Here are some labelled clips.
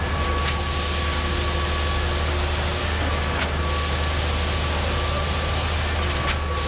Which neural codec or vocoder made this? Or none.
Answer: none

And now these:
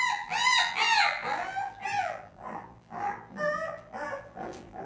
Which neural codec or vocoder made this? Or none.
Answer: vocoder, BigVGAN v2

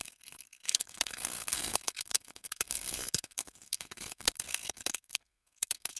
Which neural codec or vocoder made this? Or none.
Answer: codec, SNAC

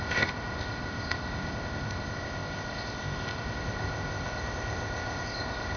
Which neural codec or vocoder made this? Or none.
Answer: codec, ZipCodec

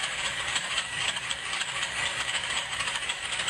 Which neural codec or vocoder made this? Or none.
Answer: codec, DAC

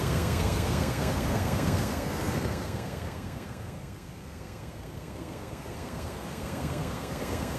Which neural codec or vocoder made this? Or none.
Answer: codec, SNAC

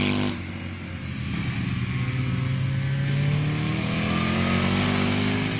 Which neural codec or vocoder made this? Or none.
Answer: none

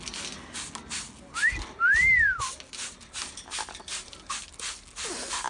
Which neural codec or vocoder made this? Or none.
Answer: none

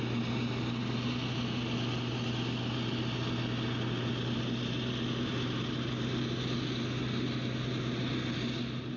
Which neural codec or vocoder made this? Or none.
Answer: none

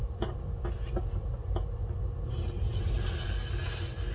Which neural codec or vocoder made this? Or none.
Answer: none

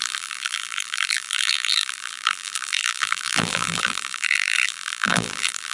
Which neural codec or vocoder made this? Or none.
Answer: vocoder, BigVGAN v2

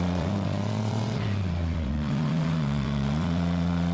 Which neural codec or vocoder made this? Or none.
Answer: vocoder, WaveNeXt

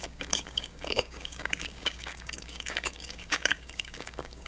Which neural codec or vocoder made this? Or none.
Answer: codec, DAC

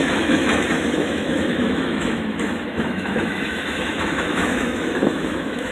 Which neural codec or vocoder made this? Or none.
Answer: autoencoder, DAC-VAE